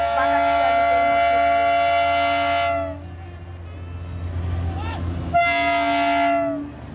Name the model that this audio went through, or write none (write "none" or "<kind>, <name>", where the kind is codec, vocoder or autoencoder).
none